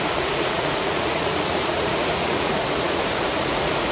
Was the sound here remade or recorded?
remade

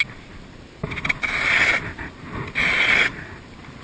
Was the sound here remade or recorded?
recorded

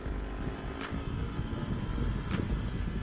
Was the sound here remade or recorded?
recorded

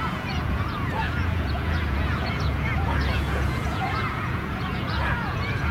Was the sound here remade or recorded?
remade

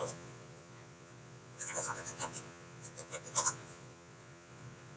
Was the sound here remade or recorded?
remade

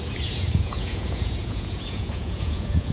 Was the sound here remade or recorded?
remade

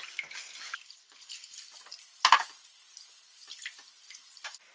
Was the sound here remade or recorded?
recorded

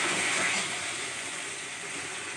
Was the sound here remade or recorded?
remade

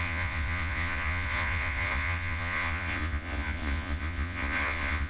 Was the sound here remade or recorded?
remade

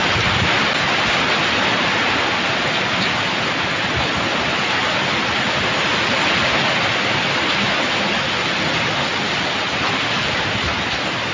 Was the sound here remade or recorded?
recorded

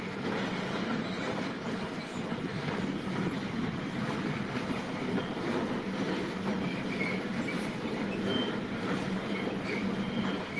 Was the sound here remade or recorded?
recorded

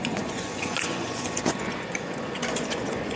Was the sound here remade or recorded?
remade